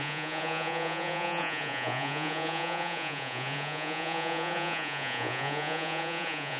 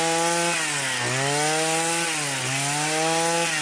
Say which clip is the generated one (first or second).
first